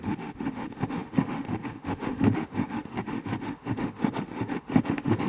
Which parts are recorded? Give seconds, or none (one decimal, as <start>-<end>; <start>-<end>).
none